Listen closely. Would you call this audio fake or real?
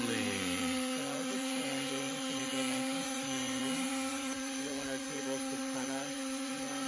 fake